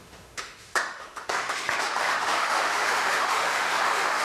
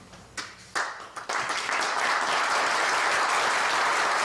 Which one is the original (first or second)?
second